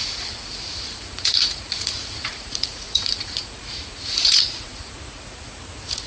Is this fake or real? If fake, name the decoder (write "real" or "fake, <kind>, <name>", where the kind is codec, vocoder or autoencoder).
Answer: fake, vocoder, Vocos